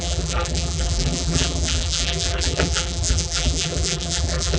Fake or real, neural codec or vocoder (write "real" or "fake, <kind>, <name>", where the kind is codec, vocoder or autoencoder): fake, vocoder, BigVGAN v2